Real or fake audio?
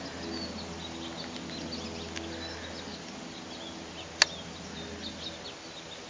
real